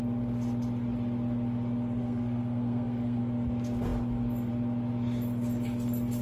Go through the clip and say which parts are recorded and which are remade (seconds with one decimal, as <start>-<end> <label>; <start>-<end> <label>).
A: 0.0-2.0 recorded; 2.0-3.2 remade; 3.2-6.2 recorded